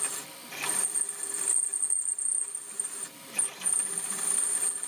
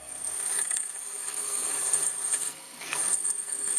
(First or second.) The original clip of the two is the first